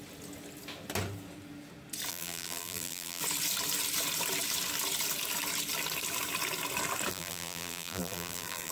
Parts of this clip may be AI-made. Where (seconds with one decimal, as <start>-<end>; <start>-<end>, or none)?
2.1-3.2; 7.1-8.7